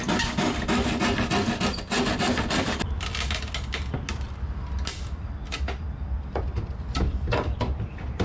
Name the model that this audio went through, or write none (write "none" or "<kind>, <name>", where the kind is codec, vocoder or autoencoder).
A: none